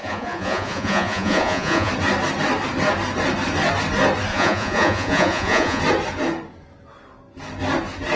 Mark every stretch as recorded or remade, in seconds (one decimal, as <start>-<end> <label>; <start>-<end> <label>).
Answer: 0.0-1.9 remade; 1.9-4.3 recorded; 4.3-5.8 remade; 5.8-8.2 recorded